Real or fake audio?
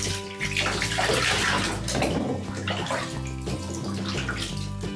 real